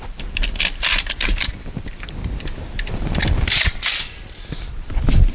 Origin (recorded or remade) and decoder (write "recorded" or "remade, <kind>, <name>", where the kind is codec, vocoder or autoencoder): recorded